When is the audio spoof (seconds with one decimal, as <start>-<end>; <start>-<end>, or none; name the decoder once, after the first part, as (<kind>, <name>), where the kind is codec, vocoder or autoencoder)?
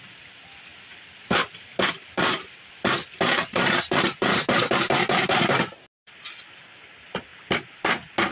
0.7-2.7 (vocoder, BigVGAN v2); 3.4-6.2; 7.3-7.8